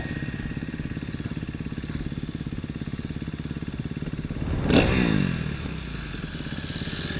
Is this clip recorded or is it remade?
recorded